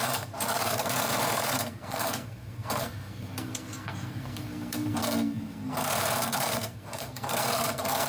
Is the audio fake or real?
fake